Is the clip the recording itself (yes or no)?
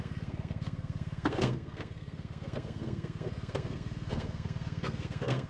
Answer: no